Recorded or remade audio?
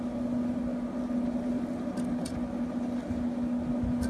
recorded